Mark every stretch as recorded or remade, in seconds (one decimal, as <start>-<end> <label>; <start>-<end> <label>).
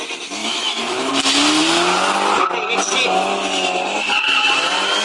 0.0-0.4 recorded; 0.4-1.1 remade; 1.1-5.0 recorded